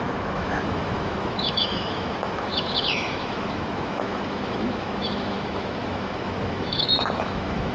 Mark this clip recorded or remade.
remade